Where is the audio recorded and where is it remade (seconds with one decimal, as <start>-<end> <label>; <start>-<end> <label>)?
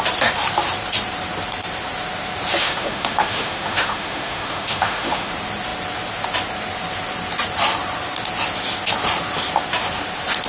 0.0-2.6 recorded; 2.6-5.3 remade; 5.3-10.5 recorded